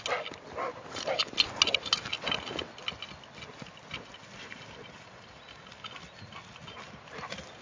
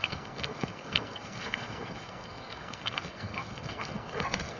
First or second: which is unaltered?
first